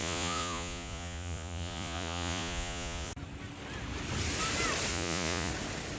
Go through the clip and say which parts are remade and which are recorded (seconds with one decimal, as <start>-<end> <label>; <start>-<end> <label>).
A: 0.0-3.1 remade; 3.1-4.9 recorded; 4.9-5.5 remade; 5.5-6.0 recorded